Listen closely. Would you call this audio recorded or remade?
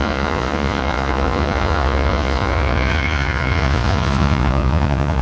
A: remade